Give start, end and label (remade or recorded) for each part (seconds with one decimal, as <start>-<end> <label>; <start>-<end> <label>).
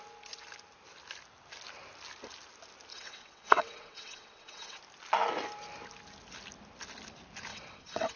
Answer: 0.0-2.9 recorded; 2.9-4.8 remade; 4.8-7.5 recorded; 7.5-8.2 remade